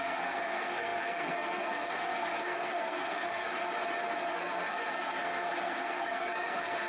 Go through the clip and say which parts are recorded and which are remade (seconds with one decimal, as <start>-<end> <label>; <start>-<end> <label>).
0.0-3.5 remade; 3.5-4.3 recorded; 4.3-6.9 remade